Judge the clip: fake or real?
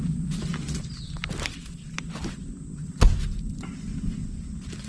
real